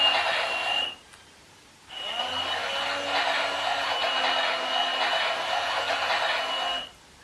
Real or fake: fake